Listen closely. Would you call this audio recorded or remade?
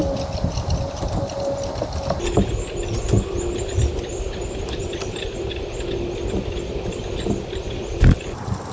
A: recorded